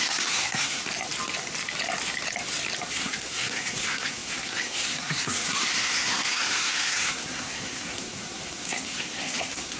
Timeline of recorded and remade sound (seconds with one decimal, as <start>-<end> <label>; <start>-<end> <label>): 0.0-0.8 remade; 0.8-2.9 recorded; 2.9-9.8 remade